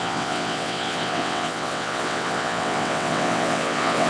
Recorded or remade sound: remade